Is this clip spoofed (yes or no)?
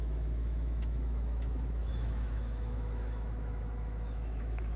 yes